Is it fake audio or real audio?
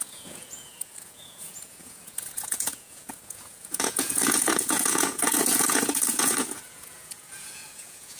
fake